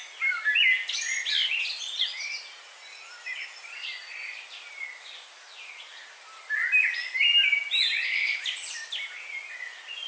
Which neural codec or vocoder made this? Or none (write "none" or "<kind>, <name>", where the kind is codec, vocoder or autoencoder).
none